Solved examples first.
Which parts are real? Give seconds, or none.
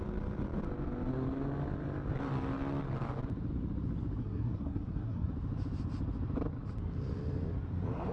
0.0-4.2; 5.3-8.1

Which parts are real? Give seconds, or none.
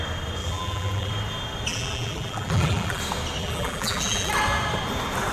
0.0-0.4; 1.1-1.7; 3.0-3.4; 4.3-5.3